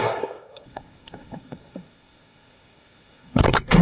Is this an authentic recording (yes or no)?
no